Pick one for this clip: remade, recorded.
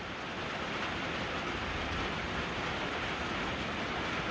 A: recorded